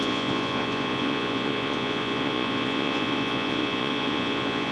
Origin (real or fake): fake